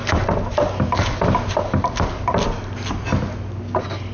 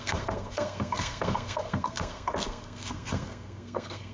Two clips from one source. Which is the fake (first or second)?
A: second